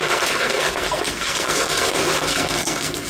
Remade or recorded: remade